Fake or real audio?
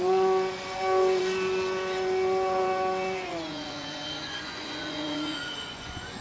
fake